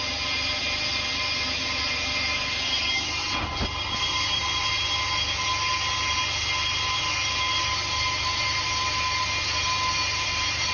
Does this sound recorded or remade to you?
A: recorded